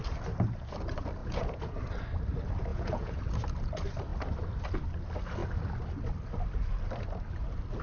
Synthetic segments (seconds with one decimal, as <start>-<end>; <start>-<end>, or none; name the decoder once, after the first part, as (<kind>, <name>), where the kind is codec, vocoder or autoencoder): 1.2-1.8 (vocoder, Vocos); 2.7-3.2